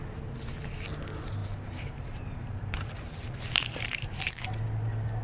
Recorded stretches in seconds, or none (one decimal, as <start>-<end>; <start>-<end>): 0.0-1.4; 4.5-5.2